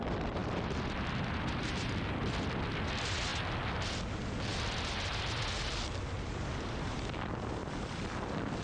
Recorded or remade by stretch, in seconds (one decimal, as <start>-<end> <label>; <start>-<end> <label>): 0.0-3.3 remade; 3.3-6.0 recorded; 6.0-8.6 remade

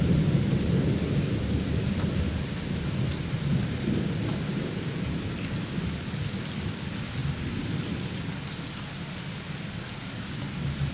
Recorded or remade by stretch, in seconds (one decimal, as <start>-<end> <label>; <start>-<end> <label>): 0.0-10.9 recorded

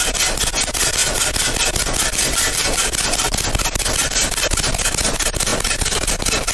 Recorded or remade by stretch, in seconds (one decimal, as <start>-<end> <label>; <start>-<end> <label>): 0.0-6.5 recorded

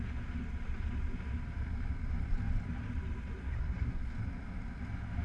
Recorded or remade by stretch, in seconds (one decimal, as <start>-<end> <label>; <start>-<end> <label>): 0.0-3.4 recorded; 3.4-4.0 remade; 4.0-5.2 recorded

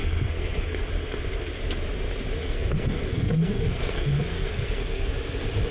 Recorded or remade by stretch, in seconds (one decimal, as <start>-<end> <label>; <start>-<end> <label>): 0.0-0.9 remade; 0.9-2.4 recorded; 2.4-5.1 remade; 5.1-5.7 recorded

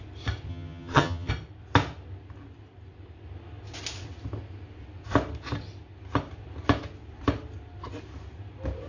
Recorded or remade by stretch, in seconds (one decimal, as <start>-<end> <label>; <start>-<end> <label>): 0.0-0.5 recorded; 0.5-1.3 remade; 1.3-8.9 recorded

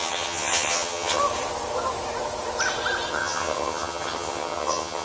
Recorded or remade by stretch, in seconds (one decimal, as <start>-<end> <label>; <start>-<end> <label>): 0.0-1.2 remade; 1.2-3.1 recorded; 3.1-5.0 remade

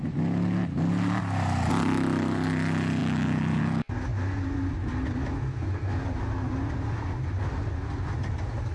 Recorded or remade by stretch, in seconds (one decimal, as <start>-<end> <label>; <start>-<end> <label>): 0.0-3.0 recorded; 3.0-3.6 remade; 3.6-8.7 recorded